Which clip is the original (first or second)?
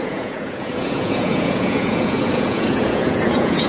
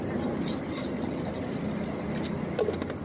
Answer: second